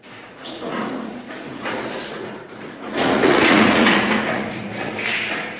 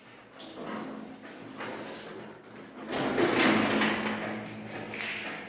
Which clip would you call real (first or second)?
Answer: second